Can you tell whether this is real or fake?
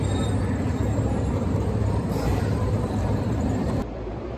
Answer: fake